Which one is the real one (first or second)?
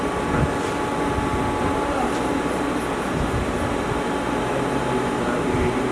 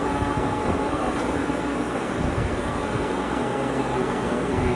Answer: first